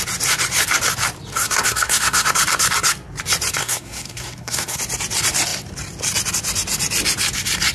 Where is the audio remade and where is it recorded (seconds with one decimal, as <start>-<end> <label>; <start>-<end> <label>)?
0.0-1.4 recorded; 1.4-2.3 remade; 2.3-3.6 recorded; 3.6-4.8 remade; 4.8-7.7 recorded